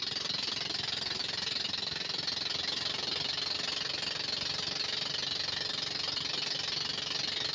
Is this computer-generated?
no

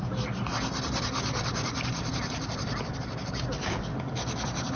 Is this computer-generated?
no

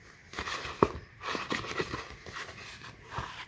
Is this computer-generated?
no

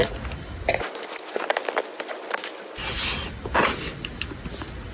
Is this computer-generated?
no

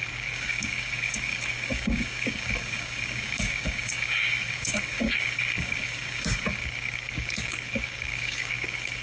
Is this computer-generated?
yes